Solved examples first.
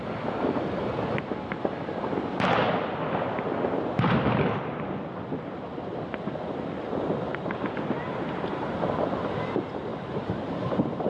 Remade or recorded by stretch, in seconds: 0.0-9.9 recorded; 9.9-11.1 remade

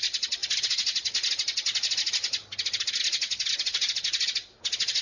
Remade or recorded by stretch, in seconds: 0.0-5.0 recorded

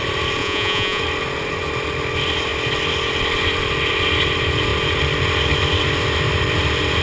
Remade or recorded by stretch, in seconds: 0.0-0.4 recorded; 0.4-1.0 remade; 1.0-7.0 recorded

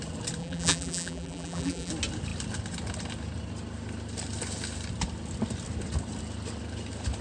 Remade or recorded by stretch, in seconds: 0.0-0.4 recorded; 0.4-1.9 remade; 1.9-7.2 recorded